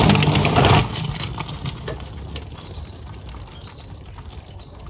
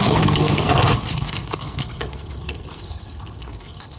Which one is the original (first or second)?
first